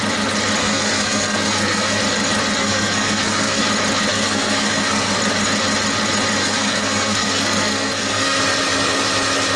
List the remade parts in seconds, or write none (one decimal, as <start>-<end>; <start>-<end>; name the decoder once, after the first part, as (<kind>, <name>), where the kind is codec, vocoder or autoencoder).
0.6-2.0 (codec, SNAC); 2.6-3.6; 4.1-5.2; 6.4-8.4

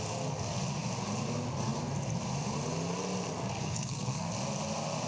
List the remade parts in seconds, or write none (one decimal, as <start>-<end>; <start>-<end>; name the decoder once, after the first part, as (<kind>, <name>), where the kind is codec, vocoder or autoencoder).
3.6-4.3 (codec, SNAC)

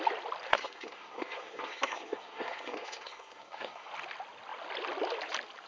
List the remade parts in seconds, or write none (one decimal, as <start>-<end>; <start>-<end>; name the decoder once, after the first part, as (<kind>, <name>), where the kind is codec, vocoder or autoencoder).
0.5-3.9 (codec, SNAC)

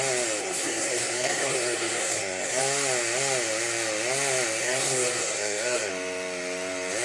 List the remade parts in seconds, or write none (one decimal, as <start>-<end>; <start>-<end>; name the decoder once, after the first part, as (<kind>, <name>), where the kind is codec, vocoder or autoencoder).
0.4-2.6 (codec, SNAC); 4.6-5.9

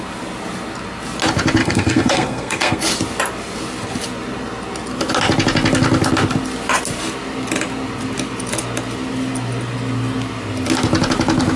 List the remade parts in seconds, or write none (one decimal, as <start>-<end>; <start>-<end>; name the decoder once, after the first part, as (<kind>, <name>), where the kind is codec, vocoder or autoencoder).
1.6-2.8 (codec, SNAC)